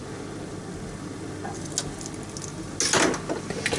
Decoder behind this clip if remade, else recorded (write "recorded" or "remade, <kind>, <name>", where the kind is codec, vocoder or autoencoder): recorded